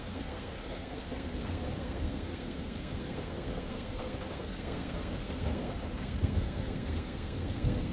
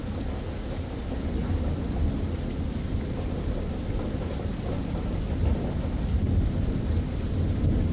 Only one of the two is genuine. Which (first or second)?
second